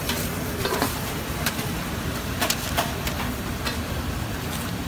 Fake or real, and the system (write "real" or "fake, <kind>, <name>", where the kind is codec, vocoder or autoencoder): fake, vocoder, BigVGAN v2